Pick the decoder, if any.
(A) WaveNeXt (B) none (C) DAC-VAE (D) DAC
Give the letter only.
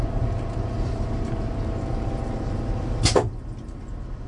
B